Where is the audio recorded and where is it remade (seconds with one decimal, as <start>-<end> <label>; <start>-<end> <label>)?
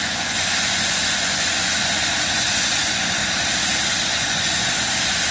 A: 0.0-3.2 remade; 3.2-3.9 recorded; 3.9-5.3 remade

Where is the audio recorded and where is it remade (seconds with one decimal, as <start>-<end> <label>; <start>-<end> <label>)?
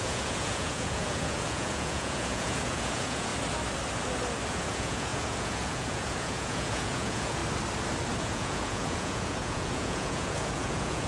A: 0.0-3.3 remade; 3.3-4.5 recorded; 4.5-7.4 remade; 7.4-8.2 recorded; 8.2-11.1 remade